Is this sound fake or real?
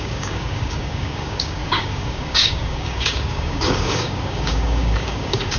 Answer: fake